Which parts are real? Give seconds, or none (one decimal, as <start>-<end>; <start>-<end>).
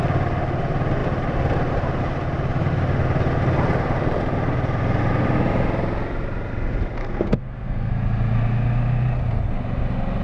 0.0-7.0; 7.9-10.2